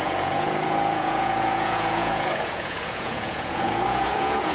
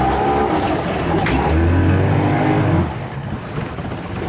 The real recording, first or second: second